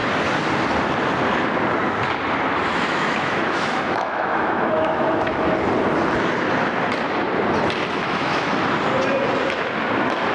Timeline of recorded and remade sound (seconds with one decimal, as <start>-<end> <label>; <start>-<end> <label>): 0.0-2.7 recorded; 2.7-5.5 remade; 5.5-8.0 recorded; 8.0-8.5 remade; 8.5-10.3 recorded